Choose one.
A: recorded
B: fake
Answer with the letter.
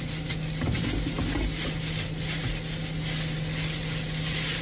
A